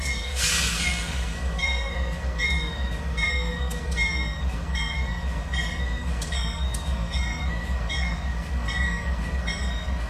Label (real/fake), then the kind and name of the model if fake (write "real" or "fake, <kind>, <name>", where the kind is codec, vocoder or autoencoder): fake, codec, SNAC